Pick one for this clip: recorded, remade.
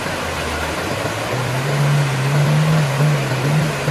recorded